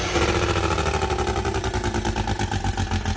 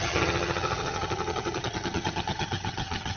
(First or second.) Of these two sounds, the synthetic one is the second